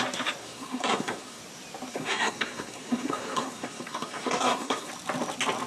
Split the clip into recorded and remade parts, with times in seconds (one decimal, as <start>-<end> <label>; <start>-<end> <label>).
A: 0.0-0.4 recorded; 0.4-1.4 remade; 1.4-1.9 recorded; 1.9-4.9 remade; 4.9-5.7 recorded